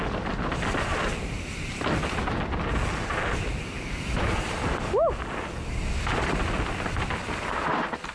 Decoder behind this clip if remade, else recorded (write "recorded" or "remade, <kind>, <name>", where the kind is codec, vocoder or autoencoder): recorded